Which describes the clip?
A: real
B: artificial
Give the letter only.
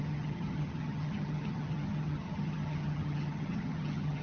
B